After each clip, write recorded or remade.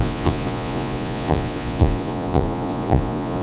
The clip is remade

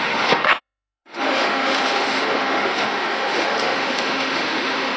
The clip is remade